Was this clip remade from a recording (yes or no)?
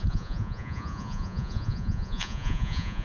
yes